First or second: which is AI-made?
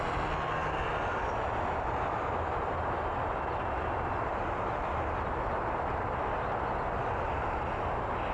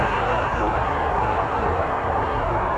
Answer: second